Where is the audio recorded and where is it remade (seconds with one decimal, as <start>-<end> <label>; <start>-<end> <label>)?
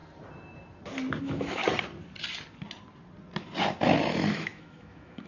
0.0-1.2 recorded; 1.2-1.6 remade; 1.6-4.1 recorded; 4.1-5.3 remade